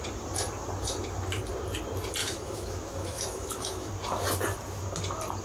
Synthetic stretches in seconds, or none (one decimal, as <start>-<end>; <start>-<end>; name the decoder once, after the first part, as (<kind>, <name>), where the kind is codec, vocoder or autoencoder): 2.2-3.9 (autoencoder, DAC-VAE)